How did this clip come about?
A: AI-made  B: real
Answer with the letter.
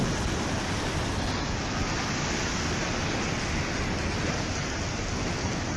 B